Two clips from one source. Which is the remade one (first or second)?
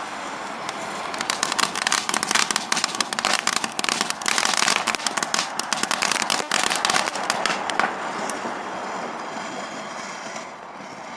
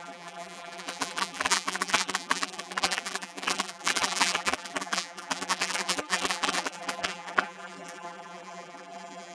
second